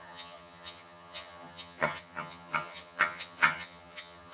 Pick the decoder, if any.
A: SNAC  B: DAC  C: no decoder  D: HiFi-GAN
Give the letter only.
D